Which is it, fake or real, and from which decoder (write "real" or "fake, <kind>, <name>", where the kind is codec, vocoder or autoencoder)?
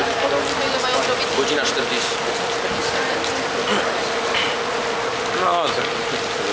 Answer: real